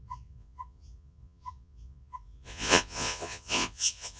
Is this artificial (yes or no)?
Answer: yes